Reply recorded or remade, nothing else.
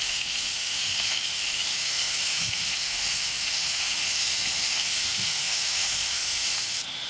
remade